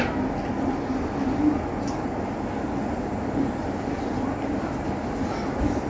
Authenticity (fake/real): real